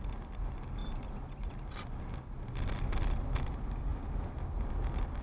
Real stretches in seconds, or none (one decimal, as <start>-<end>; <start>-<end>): 0.0-0.8; 2.0-5.2